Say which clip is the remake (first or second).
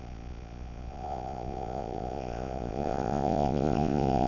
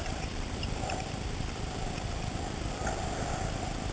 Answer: first